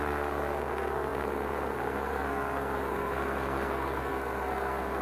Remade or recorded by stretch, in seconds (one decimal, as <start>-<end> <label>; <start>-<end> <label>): 0.0-5.0 remade